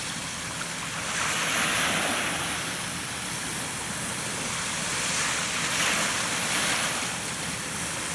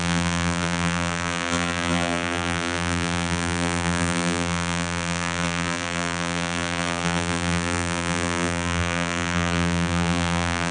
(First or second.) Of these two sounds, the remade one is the second